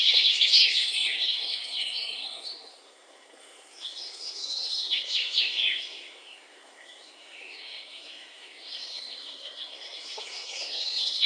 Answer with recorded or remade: remade